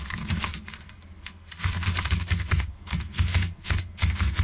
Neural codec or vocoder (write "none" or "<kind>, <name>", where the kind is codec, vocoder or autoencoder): codec, SNAC